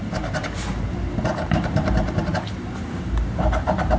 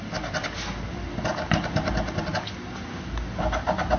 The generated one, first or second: first